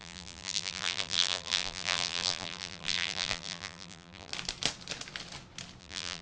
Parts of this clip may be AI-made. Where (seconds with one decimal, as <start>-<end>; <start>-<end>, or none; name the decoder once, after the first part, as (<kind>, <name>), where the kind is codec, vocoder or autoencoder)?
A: 0.0-4.3 (vocoder, BigVGAN v2); 5.8-6.2